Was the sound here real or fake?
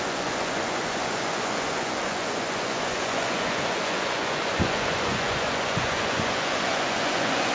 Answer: fake